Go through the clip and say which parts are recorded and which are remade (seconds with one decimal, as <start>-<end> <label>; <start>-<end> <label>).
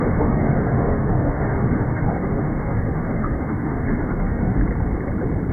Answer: 0.0-4.6 remade; 4.6-5.5 recorded